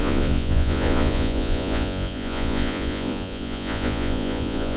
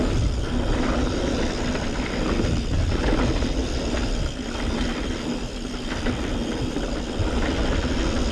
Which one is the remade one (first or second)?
first